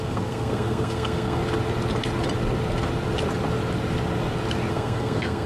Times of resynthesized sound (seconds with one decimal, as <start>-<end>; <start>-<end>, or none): 0.0-1.4; 4.7-5.5